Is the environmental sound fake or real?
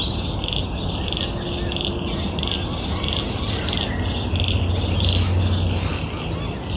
real